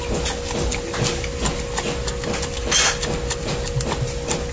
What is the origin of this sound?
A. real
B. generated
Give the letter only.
A